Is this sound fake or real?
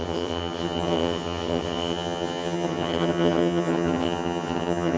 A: fake